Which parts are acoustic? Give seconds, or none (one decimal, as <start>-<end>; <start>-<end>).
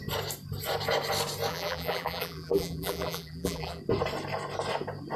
0.0-1.5; 3.8-5.2